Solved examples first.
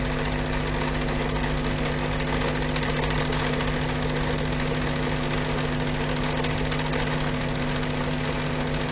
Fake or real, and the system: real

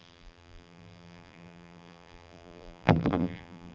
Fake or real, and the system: fake, vocoder, BigVGAN v2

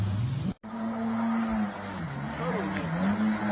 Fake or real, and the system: real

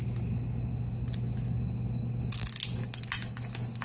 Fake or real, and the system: real